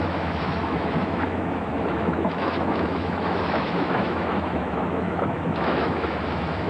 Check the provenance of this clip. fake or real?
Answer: fake